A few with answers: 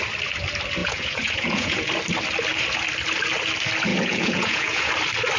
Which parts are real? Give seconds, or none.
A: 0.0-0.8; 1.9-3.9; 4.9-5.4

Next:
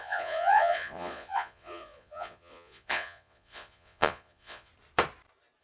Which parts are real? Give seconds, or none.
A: 4.7-5.6

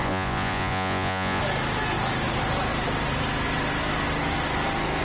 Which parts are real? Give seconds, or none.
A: 1.4-5.0

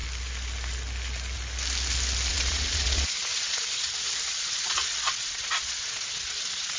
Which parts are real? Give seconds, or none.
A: 0.0-2.3

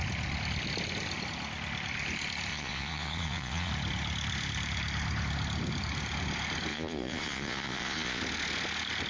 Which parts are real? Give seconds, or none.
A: 0.0-2.5; 3.7-6.7; 8.2-9.1